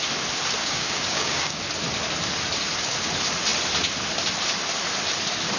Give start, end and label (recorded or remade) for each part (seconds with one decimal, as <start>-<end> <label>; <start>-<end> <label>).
0.0-0.6 recorded; 0.6-1.6 remade; 1.6-5.6 recorded